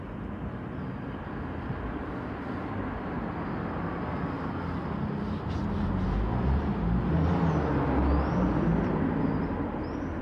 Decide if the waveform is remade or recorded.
recorded